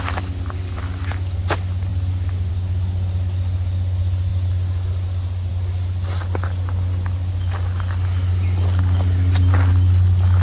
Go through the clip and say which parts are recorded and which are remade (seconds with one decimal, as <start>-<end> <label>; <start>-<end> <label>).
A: 0.0-10.4 recorded